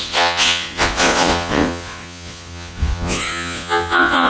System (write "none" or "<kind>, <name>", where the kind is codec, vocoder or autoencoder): vocoder, Vocos